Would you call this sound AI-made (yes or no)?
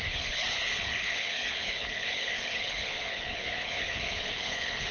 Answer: yes